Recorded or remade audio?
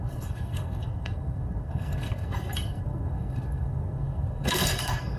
remade